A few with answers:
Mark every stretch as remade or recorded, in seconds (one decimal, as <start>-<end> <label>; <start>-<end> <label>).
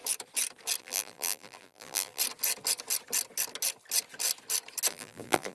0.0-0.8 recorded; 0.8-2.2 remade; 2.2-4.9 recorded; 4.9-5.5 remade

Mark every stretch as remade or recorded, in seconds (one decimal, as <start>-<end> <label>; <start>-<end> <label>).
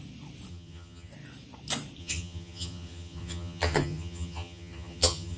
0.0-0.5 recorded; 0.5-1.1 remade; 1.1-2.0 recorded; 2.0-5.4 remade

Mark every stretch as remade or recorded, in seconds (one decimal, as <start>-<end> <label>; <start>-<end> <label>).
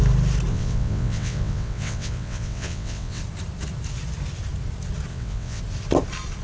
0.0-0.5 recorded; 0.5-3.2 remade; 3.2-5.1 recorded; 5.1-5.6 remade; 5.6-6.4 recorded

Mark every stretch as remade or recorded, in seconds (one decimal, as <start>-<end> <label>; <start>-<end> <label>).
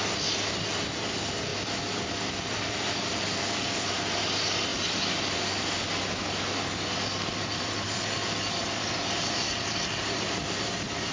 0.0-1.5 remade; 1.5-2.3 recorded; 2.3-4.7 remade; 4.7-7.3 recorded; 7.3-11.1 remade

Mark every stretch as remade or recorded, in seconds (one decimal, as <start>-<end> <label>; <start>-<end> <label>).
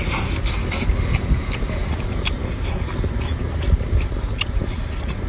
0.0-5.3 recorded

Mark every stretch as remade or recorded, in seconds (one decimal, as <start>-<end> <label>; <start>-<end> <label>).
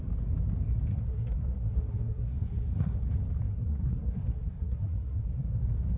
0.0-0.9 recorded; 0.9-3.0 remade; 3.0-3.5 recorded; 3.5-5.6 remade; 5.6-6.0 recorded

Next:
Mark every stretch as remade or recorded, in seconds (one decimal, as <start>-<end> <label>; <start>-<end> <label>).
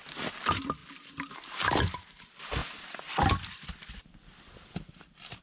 0.0-0.8 recorded; 0.8-1.3 remade; 1.3-2.6 recorded; 2.6-5.4 remade